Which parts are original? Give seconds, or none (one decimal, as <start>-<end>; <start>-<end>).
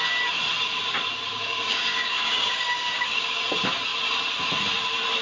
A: 0.0-1.3; 3.4-5.2